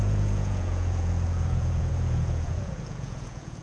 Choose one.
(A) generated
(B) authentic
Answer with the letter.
A